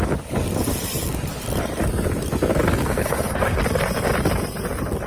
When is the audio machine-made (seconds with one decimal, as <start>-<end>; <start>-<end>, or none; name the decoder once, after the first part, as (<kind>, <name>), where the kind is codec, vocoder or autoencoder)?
2.7-3.6 (codec, SNAC)